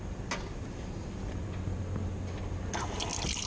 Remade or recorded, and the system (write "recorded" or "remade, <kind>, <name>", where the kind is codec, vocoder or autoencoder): recorded